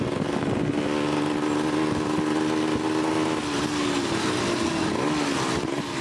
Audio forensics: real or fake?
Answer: real